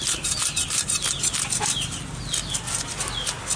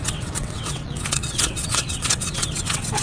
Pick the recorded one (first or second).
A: first